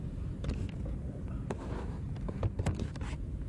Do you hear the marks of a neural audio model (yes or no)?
no